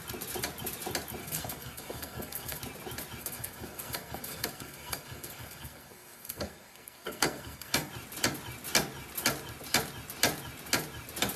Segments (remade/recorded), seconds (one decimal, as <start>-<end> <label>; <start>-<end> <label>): 0.0-1.2 recorded; 1.2-2.6 remade; 2.6-3.2 recorded; 3.2-7.9 remade; 7.9-11.4 recorded